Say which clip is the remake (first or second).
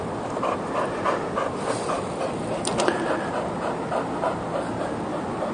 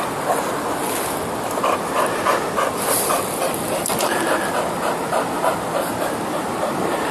second